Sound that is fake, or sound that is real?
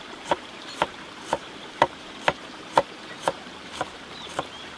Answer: fake